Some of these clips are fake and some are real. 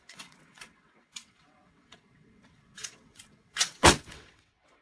fake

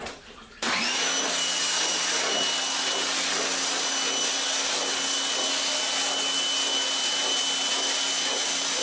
real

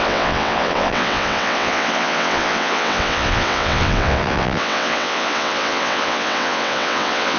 fake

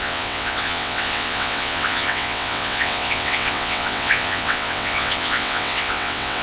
fake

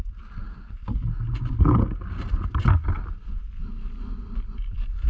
real